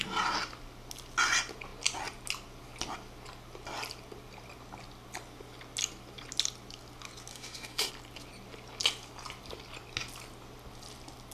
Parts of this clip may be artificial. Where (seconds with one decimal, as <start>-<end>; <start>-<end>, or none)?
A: 7.3-7.9